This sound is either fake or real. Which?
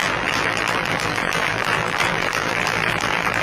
fake